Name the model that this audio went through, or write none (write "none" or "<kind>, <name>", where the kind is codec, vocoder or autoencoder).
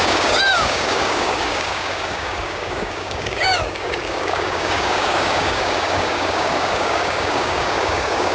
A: codec, DAC